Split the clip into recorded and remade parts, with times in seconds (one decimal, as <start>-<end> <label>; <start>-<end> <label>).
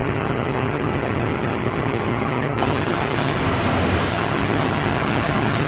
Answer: 0.0-3.4 remade; 3.4-4.1 recorded; 4.1-5.7 remade